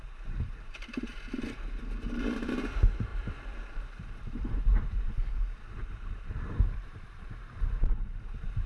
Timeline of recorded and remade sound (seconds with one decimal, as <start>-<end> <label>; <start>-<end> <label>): 0.0-8.7 remade